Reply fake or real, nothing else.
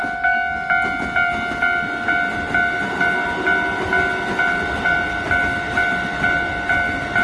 real